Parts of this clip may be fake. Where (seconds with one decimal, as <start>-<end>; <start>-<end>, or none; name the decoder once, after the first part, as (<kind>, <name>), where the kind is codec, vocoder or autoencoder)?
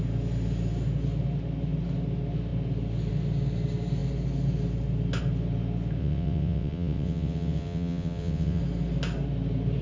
6.0-8.6 (vocoder, WaveNeXt)